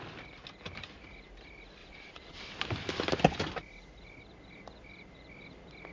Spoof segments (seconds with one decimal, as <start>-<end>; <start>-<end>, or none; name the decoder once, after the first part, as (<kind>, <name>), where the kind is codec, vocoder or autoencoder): 1.8-2.5 (vocoder, Vocos)

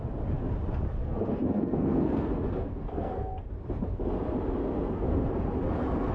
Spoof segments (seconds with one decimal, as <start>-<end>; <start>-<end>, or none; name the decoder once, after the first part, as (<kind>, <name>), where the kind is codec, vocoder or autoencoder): 1.0-2.3 (codec, SNAC); 2.7-3.5

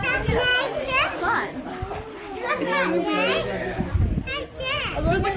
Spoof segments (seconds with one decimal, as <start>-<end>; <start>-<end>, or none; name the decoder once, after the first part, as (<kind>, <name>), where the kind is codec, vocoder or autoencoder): none

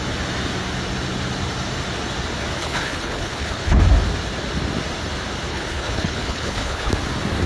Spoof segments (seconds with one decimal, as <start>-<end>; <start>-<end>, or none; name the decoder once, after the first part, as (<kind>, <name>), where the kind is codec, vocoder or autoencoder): 2.6-3.8 (codec, HILCodec); 5.5-6.9

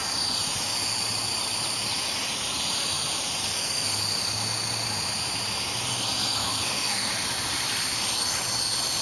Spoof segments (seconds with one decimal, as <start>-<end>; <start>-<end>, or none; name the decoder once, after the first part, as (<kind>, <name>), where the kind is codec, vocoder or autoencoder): 3.4-4.0 (codec, SNAC); 5.9-7.1

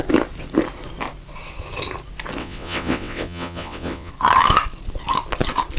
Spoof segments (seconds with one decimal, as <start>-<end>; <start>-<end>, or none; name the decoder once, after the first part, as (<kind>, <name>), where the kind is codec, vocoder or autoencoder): 2.4-4.1 (vocoder, WaveNeXt)

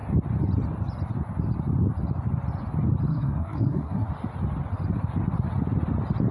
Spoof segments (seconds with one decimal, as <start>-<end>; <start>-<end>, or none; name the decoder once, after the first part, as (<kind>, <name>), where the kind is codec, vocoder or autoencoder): 3.1-4.1 (codec, SNAC)

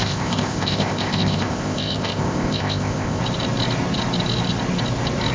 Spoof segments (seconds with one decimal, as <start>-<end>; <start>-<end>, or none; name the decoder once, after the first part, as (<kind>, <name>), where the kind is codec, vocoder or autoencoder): 0.0-3.2 (codec, ZipCodec)